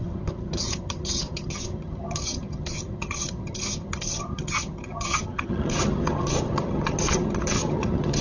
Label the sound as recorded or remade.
remade